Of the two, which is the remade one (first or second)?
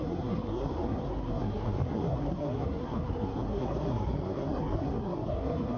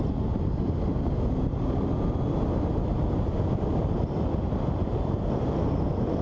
first